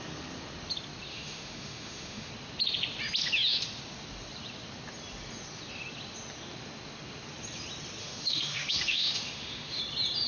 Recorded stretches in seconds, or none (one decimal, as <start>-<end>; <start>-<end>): 0.0-1.1; 2.3-8.0; 9.8-10.3